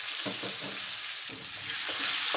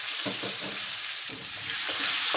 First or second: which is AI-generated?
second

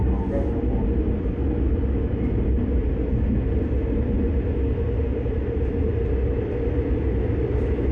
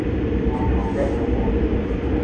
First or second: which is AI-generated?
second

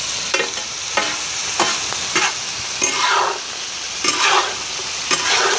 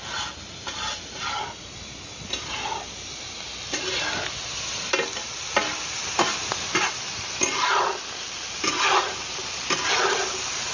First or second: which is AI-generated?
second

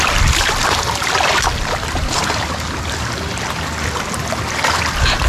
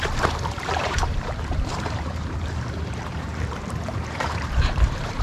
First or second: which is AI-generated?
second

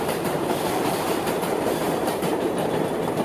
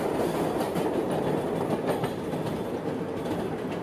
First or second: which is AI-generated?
first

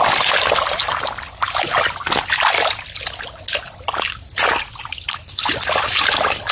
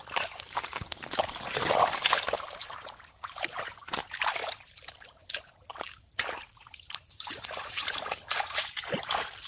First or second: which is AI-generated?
second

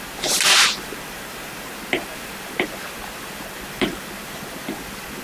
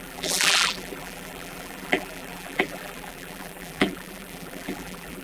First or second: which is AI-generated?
second